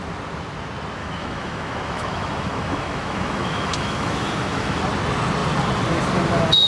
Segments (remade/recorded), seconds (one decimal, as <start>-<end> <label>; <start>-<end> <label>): 0.0-1.0 recorded; 1.0-4.8 remade; 4.8-6.7 recorded